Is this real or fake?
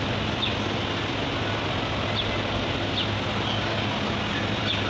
real